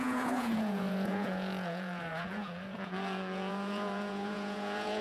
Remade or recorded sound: remade